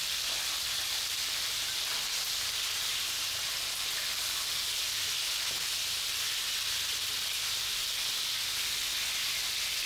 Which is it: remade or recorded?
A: recorded